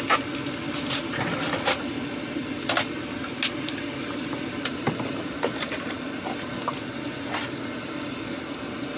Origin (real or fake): real